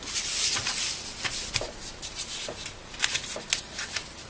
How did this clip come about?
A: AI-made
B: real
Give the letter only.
B